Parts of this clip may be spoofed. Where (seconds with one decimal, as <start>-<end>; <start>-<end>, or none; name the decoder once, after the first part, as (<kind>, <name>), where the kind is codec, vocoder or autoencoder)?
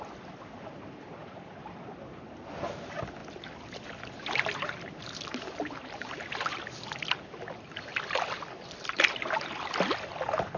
7.9-9.2 (vocoder, BigVGAN v2)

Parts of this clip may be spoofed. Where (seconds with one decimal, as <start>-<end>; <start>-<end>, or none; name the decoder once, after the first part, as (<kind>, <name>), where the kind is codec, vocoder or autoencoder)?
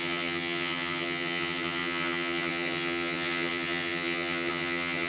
0.0-5.1 (vocoder, HiFi-GAN)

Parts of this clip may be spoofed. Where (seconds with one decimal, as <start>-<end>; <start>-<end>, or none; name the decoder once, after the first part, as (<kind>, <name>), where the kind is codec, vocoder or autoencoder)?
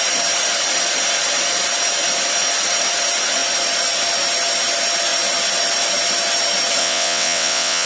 6.8-7.9 (vocoder, WaveNeXt)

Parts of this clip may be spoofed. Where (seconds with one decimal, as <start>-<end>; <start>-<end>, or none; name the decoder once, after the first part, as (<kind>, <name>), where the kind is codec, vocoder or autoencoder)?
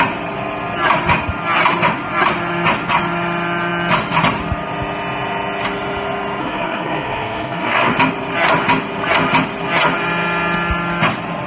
6.4-7.9 (codec, SNAC)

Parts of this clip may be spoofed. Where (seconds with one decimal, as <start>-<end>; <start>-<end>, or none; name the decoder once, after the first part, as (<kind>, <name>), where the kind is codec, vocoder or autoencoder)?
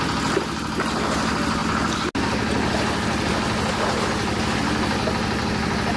none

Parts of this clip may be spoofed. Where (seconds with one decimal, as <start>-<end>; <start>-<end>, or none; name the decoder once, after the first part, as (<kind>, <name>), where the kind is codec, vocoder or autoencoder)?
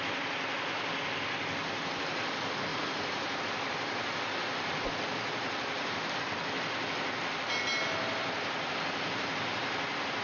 2.7-3.4 (vocoder, Vocos)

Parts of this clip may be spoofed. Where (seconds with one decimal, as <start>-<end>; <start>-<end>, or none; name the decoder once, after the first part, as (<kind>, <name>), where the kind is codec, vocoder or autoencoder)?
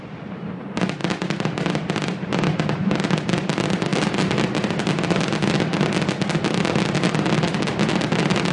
none